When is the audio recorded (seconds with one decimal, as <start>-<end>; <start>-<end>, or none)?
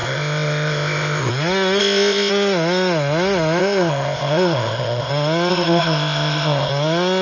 1.3-1.8; 2.3-3.6; 5.1-5.5; 6.7-7.2